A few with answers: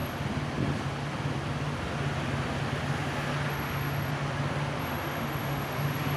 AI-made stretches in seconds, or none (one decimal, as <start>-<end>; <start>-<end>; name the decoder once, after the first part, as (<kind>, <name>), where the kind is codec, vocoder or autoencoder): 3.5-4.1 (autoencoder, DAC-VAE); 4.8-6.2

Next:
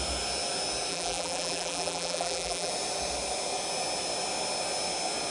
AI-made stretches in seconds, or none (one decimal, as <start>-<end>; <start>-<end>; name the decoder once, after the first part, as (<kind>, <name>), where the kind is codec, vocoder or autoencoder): 0.9-2.7 (vocoder, BigVGAN v2)

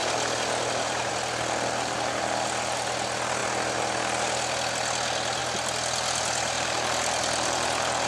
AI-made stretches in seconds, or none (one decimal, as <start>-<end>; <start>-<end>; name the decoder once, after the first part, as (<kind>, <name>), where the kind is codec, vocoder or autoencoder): none

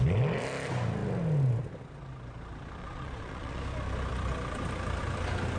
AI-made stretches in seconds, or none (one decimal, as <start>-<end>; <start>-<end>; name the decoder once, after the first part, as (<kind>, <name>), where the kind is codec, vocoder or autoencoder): 2.8-3.6 (vocoder, Vocos)

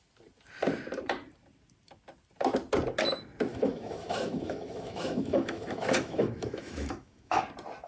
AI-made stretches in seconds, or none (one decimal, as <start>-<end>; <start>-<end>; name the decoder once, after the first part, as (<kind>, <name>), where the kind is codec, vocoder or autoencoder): 3.5-7.4 (autoencoder, DAC-VAE)

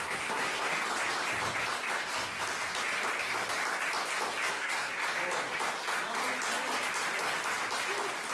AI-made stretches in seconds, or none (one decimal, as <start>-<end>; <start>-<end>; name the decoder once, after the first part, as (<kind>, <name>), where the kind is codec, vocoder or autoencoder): 0.0-0.7 (codec, SNAC); 4.5-5.0

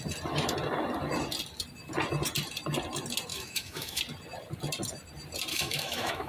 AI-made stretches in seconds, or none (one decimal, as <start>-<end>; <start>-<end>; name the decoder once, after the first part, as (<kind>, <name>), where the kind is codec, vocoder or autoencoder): 3.3-4.0 (autoencoder, DAC-VAE); 5.5-6.3

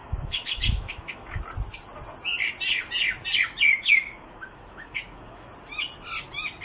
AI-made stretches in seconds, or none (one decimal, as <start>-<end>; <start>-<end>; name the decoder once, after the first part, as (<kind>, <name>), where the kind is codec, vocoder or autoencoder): 0.0-1.4 (autoencoder, DAC-VAE); 3.7-5.5